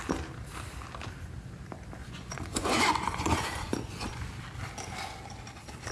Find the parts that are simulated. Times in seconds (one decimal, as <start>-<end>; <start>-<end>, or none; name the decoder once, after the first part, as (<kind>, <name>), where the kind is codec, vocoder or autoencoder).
2.0-4.3 (vocoder, Vocos)